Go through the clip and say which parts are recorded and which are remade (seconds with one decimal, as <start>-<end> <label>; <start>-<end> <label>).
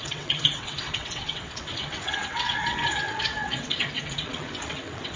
0.0-5.2 remade